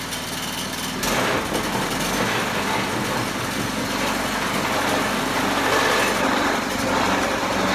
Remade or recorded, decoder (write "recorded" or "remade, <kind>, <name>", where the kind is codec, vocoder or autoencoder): recorded